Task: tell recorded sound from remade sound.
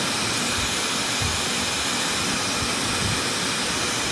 recorded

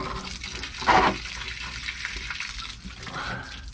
recorded